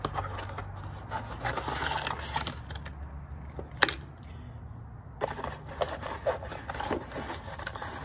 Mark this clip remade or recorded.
recorded